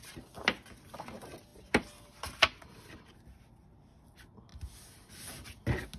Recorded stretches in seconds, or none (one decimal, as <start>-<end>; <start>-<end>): 0.0-6.0